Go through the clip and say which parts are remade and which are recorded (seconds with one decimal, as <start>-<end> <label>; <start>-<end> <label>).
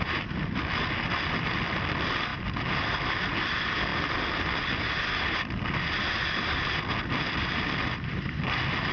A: 0.0-8.9 recorded